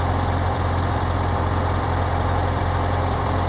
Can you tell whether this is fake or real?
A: fake